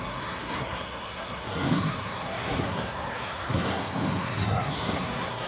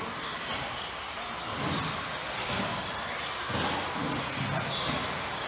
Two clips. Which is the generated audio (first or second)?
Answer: first